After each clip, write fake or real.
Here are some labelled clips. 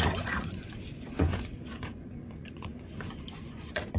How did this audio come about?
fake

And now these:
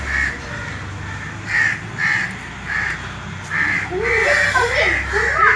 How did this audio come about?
real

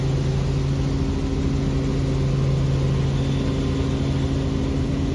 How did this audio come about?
real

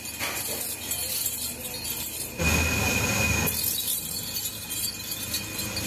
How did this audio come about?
real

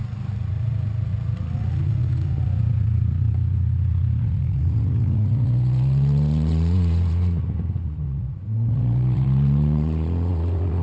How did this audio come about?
fake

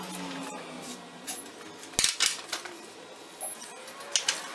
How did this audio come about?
real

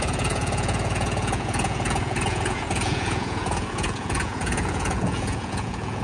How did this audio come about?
fake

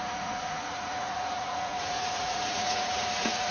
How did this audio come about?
fake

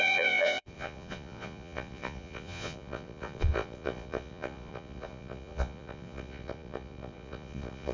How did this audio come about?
fake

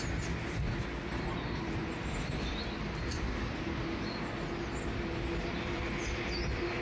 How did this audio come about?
real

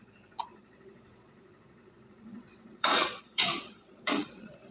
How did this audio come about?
fake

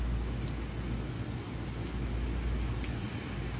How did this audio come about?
real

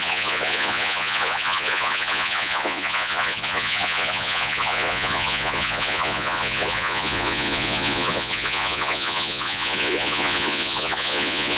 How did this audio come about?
fake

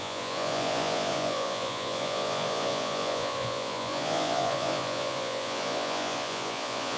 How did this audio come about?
fake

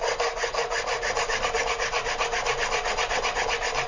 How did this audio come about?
real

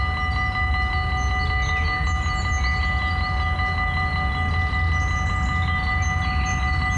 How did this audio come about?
real